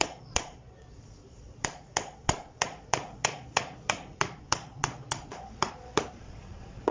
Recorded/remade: remade